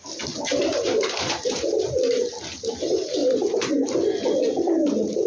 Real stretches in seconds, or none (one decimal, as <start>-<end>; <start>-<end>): 0.0-0.6; 1.7-3.2; 3.7-5.3